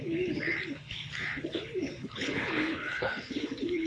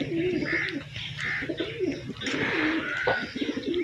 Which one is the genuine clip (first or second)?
second